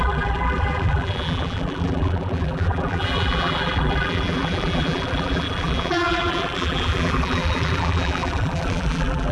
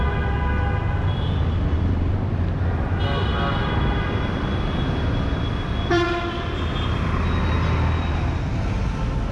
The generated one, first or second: first